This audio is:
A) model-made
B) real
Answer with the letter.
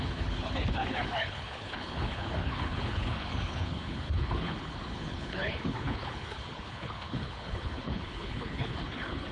A